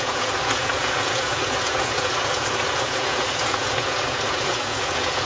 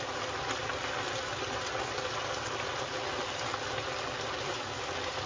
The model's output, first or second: first